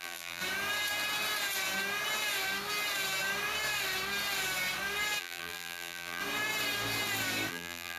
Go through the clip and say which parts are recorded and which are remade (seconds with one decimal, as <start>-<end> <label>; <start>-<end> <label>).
0.0-0.4 remade; 0.4-5.2 recorded; 5.2-6.2 remade; 6.2-7.5 recorded; 7.5-8.0 remade